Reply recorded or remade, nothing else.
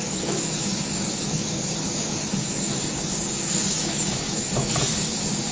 remade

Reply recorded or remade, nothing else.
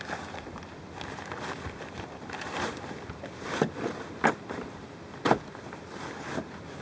recorded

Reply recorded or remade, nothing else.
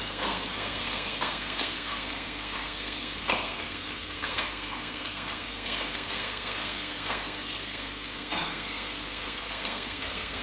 remade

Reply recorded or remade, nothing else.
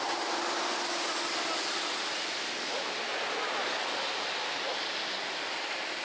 recorded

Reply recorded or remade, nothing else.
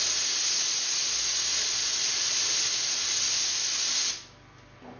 recorded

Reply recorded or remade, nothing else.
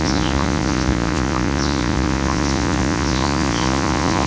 remade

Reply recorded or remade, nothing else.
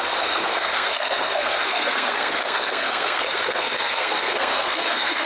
remade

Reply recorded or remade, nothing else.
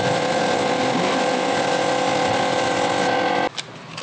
recorded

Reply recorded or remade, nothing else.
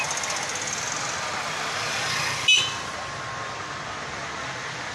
recorded